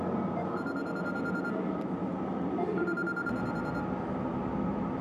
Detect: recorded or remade recorded